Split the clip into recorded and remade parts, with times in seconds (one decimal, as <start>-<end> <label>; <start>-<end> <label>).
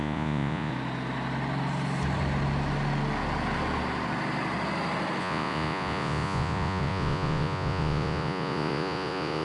0.0-0.7 remade; 0.7-5.2 recorded; 5.2-9.4 remade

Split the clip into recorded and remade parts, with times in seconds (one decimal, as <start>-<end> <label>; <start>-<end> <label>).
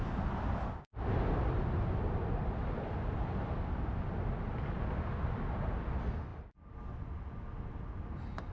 0.0-8.5 recorded